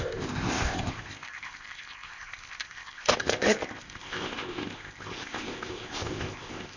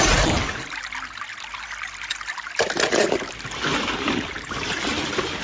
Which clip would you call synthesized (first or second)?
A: first